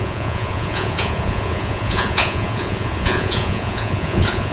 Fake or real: fake